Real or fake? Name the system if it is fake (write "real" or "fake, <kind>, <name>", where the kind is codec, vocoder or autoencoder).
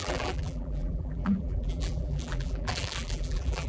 fake, vocoder, BigVGAN v2